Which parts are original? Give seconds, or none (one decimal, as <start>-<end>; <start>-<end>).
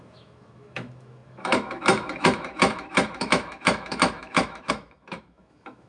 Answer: none